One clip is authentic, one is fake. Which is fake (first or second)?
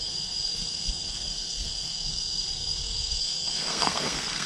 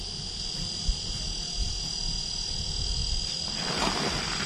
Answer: first